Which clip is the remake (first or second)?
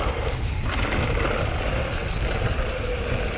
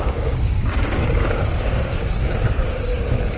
second